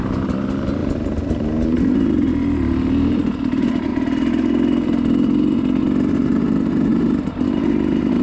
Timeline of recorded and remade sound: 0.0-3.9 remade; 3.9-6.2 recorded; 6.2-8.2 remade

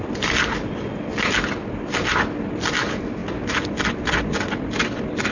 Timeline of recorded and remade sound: 0.0-5.3 recorded